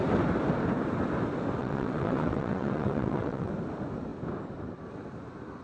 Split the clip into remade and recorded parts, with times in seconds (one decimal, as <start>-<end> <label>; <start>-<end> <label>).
0.0-1.6 recorded; 1.6-3.5 remade; 3.5-5.6 recorded